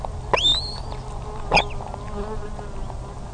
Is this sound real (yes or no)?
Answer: yes